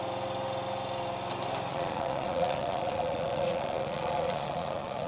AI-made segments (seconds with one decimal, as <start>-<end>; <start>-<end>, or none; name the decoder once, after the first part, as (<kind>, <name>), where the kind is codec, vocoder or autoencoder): 1.7-5.1 (vocoder, Vocos)